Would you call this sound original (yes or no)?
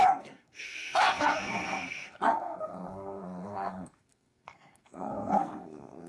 no